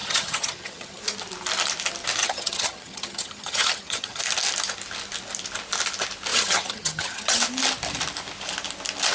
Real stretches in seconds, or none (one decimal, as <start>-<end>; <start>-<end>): 1.0-2.2; 4.2-6.3; 7.4-9.1